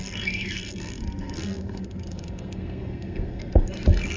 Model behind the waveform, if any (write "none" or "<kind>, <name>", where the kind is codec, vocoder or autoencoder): codec, SNAC